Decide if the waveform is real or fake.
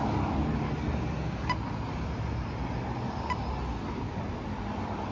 real